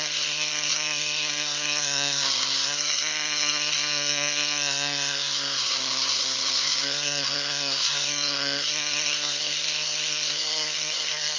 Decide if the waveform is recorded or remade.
remade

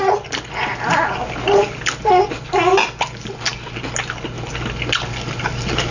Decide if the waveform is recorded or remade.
recorded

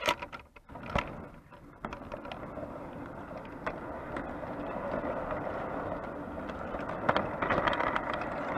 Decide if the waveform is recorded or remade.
recorded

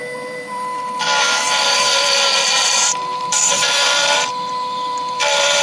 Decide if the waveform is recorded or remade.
remade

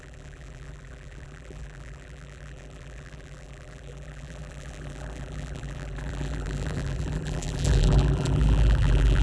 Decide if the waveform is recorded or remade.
remade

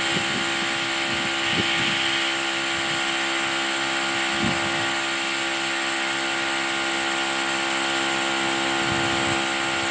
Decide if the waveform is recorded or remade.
recorded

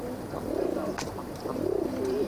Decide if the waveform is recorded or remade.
recorded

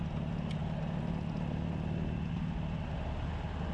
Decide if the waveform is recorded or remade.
recorded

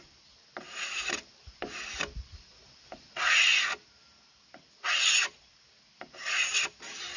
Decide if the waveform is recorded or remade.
recorded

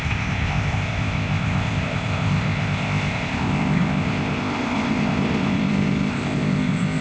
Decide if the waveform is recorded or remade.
remade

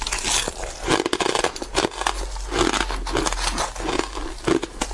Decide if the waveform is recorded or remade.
recorded